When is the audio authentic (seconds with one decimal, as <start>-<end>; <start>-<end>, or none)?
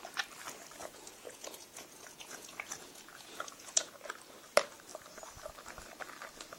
0.0-0.8; 3.9-6.6